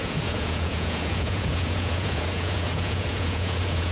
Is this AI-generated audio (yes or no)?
yes